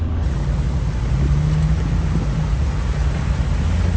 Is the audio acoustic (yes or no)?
yes